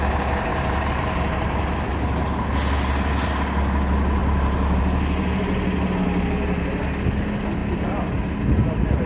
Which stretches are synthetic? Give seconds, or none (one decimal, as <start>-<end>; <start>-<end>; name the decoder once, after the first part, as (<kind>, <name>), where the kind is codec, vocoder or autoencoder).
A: 0.5-1.9 (vocoder, BigVGAN v2); 4.2-4.8